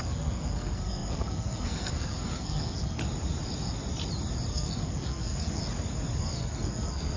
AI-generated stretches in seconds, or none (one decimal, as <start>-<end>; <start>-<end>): 0.0-3.0; 4.5-5.6; 6.2-7.2